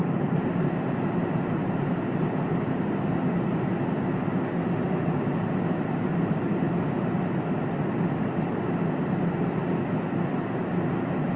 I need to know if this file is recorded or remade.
recorded